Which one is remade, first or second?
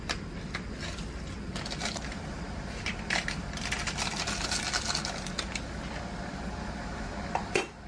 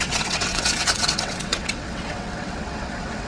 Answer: second